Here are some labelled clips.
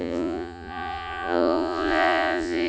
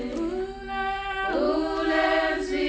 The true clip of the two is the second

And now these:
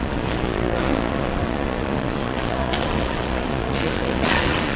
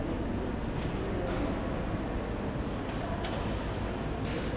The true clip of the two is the second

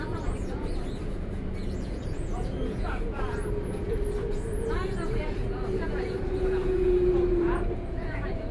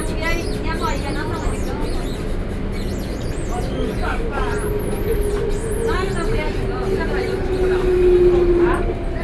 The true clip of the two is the second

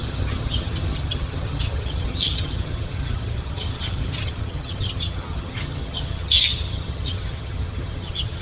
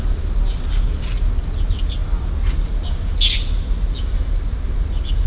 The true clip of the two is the second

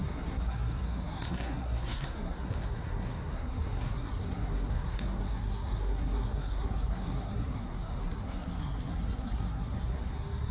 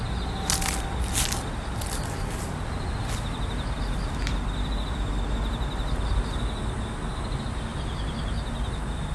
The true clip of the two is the second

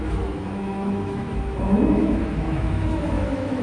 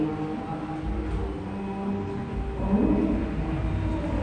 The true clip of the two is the second